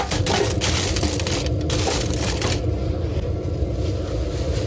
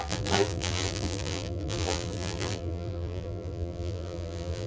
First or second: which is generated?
second